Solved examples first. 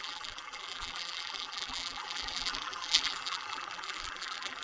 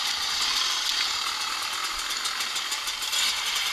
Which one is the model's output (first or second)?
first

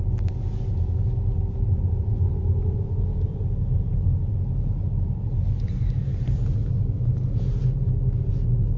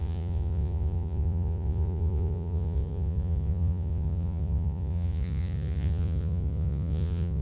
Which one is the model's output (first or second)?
second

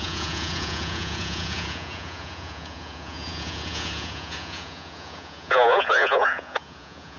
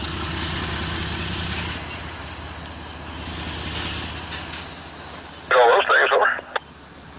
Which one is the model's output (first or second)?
first